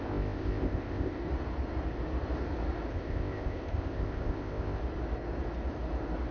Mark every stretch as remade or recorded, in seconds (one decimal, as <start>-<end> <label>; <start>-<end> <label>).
0.0-1.2 remade; 1.2-2.9 recorded; 2.9-4.8 remade; 4.8-6.3 recorded